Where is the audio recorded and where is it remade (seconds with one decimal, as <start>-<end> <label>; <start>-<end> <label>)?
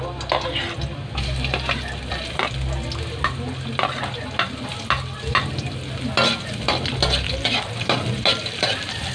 0.0-9.1 recorded